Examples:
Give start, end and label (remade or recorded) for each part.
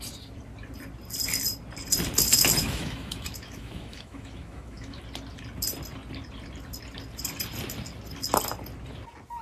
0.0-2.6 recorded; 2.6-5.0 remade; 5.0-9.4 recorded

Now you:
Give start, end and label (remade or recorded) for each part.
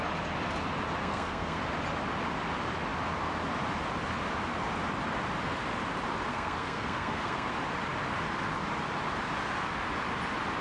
0.0-1.0 recorded; 1.0-1.6 remade; 1.6-6.3 recorded; 6.3-7.5 remade; 7.5-10.6 recorded